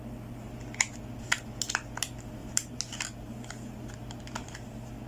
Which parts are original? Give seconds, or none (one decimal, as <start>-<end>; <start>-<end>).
0.0-2.4; 4.2-5.1